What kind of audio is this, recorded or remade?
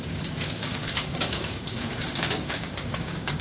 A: remade